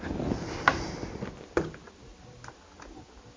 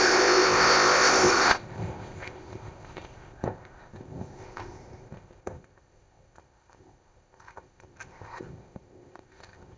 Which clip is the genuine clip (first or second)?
first